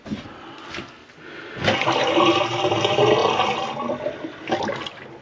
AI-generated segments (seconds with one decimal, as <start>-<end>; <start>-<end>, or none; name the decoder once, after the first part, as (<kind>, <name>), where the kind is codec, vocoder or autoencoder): none